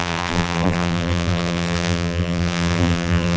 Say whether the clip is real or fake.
fake